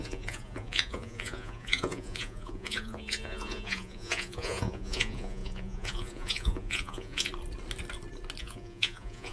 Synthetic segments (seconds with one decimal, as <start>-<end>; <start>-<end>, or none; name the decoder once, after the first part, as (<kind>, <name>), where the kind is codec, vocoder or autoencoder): 0.0-7.3 (vocoder, Vocos); 8.4-9.3

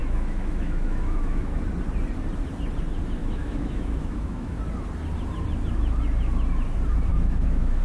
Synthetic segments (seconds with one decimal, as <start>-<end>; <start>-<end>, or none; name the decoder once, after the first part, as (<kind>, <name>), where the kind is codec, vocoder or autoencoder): 0.0-1.6 (autoencoder, DAC-VAE); 3.2-4.6; 7.1-7.8

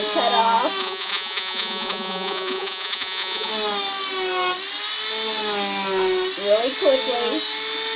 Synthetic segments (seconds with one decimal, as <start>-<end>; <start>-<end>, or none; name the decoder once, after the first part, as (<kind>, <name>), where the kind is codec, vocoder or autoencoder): 0.8-3.5 (vocoder, Vocos)

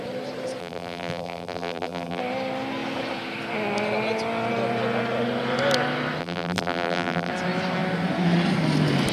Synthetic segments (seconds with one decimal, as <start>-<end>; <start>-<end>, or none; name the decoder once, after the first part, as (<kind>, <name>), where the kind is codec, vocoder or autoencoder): 0.6-2.2 (vocoder, BigVGAN v2); 6.2-7.3

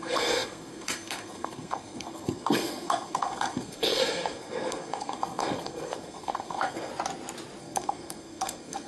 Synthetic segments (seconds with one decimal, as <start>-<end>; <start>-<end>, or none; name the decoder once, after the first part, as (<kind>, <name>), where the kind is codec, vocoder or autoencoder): 0.0-6.9 (codec, SNAC); 7.6-8.9